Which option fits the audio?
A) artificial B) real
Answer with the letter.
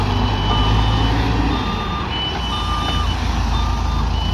B